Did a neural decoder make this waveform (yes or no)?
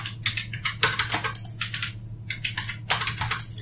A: no